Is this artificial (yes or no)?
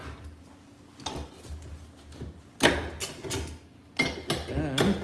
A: no